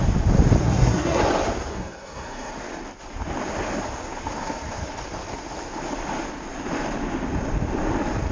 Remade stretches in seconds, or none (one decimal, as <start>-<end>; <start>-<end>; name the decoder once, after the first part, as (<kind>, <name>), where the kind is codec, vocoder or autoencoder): 0.6-1.2 (codec, SNAC); 1.7-2.5